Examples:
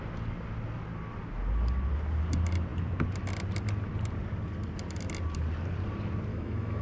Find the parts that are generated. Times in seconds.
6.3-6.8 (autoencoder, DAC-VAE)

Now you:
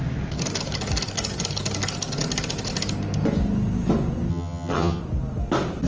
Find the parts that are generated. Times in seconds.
4.3-5.0 (vocoder, HiFi-GAN)

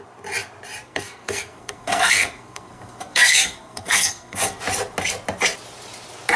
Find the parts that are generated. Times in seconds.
0.8-4.6 (codec, SNAC)

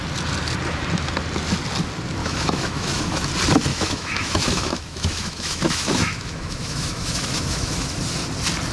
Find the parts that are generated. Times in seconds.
2.2-3.3 (autoencoder, DAC-VAE); 3.7-8.0

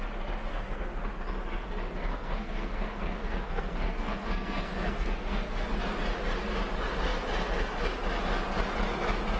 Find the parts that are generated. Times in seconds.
0.5-1.1 (codec, SNAC); 2.1-5.7

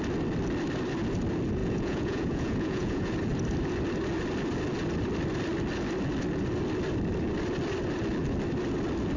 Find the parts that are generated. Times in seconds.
1.6-3.1 (vocoder, Vocos)

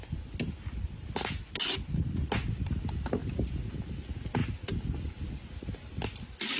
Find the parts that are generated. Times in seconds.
none

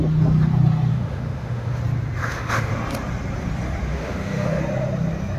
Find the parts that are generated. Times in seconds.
0.9-1.8 (autoencoder, DAC-VAE); 2.2-2.7; 3.9-4.6